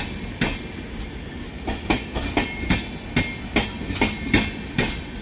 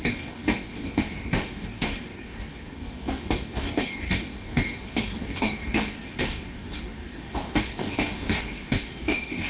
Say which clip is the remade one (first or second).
second